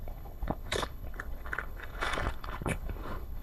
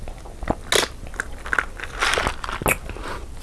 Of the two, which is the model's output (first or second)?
first